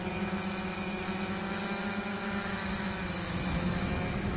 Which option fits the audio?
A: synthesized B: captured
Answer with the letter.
A